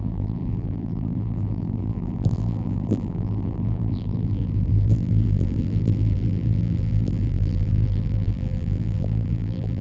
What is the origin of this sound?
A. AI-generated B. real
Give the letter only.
A